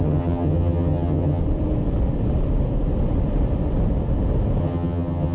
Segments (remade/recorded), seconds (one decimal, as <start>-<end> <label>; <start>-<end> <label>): 0.0-1.4 remade; 1.4-4.6 recorded; 4.6-5.3 remade